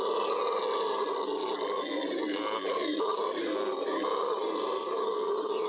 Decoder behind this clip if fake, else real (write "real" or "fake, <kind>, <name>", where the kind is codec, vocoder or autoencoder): real